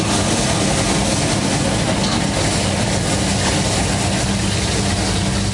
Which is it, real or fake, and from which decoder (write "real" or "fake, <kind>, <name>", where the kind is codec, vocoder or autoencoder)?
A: real